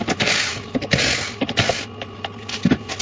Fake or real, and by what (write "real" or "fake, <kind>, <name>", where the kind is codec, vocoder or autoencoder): real